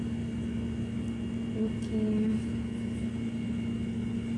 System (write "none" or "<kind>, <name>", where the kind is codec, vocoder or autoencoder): none